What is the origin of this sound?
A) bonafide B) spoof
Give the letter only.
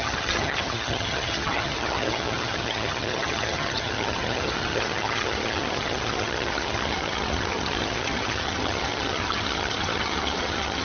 B